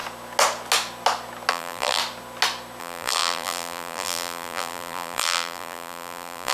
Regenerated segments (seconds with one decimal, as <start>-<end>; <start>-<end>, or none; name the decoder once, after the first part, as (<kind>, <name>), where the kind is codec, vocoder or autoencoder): 1.5-2.0 (vocoder, BigVGAN v2); 2.8-6.5